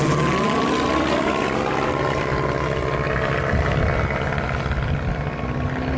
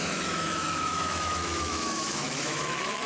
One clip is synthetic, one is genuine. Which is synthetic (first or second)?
second